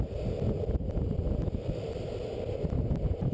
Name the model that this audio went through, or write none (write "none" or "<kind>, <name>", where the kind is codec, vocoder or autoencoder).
none